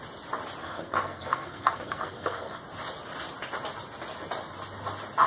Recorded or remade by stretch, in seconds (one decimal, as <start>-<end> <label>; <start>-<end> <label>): 0.0-0.6 recorded; 0.6-2.6 remade; 2.6-5.3 recorded